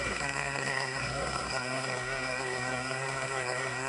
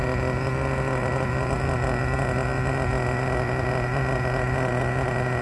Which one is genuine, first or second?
second